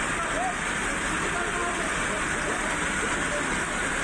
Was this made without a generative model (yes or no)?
no